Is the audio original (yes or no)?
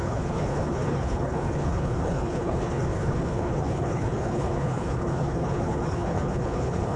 no